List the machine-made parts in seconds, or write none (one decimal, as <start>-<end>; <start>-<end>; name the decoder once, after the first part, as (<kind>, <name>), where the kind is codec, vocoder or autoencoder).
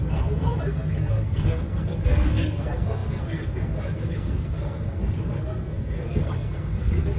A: 0.0-7.2 (codec, SNAC)